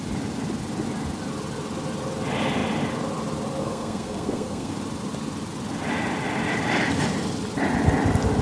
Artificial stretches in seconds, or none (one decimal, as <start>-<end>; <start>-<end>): 3.6-4.7